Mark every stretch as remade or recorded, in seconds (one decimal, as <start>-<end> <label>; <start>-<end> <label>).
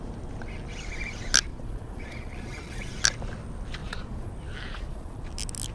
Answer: 0.0-1.5 recorded; 1.5-3.0 remade; 3.0-3.8 recorded; 3.8-4.3 remade; 4.3-4.7 recorded; 4.7-5.2 remade; 5.2-5.7 recorded